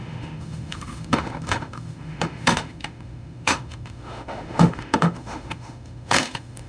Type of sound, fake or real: fake